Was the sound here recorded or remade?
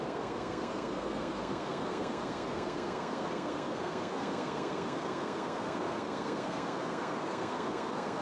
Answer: remade